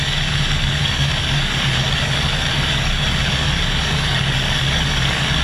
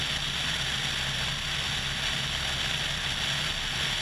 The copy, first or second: first